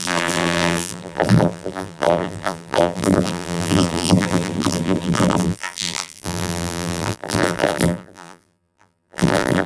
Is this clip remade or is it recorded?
remade